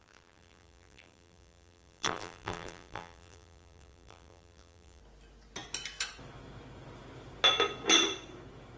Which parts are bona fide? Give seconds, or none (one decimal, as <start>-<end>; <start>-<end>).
5.0-8.8

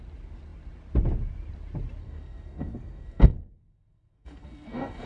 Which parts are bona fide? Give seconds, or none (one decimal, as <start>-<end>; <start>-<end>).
0.0-2.0